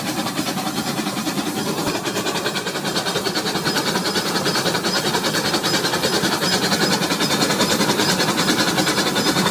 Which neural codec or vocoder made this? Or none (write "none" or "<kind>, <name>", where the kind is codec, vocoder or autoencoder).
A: vocoder, BigVGAN v2